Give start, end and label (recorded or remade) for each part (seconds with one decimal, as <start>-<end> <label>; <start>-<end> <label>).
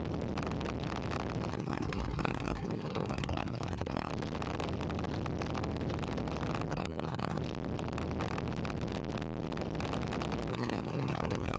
0.0-1.5 recorded; 1.5-4.1 remade; 4.1-6.7 recorded; 6.7-7.4 remade; 7.4-10.5 recorded; 10.5-11.6 remade